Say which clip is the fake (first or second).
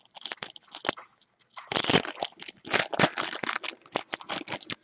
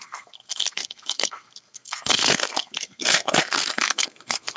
second